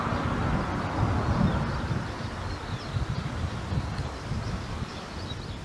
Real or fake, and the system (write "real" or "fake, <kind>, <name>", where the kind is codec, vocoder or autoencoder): real